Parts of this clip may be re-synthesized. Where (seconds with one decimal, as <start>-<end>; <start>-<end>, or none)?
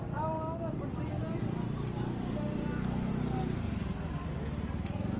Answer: 2.6-3.1